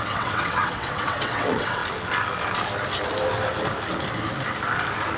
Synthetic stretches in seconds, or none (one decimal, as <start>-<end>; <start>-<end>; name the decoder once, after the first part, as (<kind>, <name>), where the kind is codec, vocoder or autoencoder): 0.0-1.8 (vocoder, WaveNeXt)